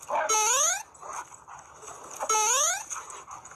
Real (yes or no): yes